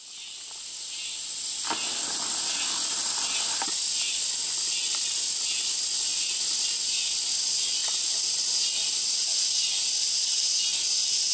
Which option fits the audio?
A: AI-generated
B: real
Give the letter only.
B